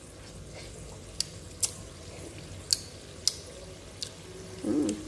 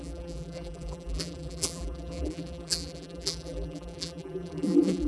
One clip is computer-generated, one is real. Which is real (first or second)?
first